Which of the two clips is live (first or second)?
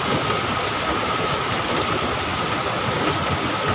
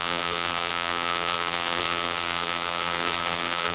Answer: first